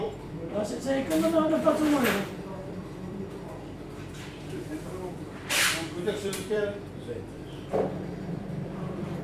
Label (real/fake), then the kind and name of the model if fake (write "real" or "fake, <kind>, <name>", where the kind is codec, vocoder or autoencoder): fake, vocoder, BigVGAN v2